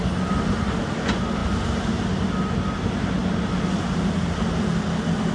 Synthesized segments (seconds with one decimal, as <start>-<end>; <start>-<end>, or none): none